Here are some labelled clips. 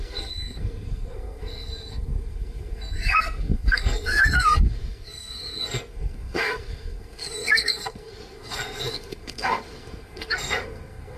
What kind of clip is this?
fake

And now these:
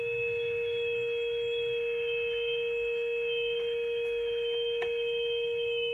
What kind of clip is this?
fake